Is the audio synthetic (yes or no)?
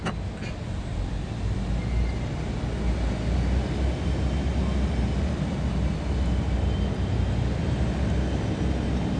no